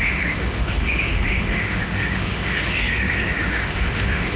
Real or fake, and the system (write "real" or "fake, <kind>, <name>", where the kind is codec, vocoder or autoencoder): fake, autoencoder, DAC-VAE